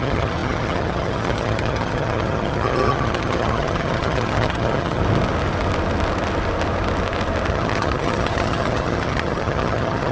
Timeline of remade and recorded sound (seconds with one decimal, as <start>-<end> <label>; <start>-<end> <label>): 0.0-5.0 remade; 5.0-7.5 recorded; 7.5-10.1 remade